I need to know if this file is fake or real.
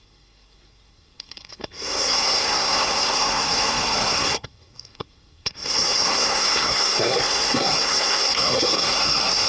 fake